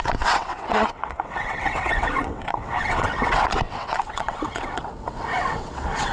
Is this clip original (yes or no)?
no